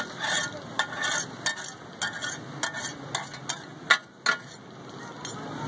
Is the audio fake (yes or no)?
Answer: no